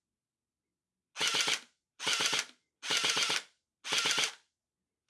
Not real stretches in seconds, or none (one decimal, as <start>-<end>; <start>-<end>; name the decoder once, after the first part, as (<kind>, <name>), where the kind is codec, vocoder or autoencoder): none